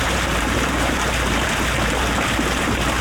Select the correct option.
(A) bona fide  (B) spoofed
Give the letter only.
B